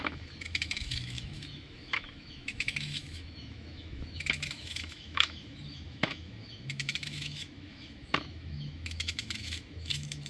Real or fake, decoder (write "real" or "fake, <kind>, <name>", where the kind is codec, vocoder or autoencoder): fake, autoencoder, DAC-VAE